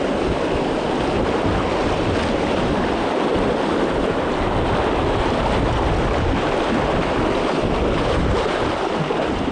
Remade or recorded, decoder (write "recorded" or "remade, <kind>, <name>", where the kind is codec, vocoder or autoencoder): recorded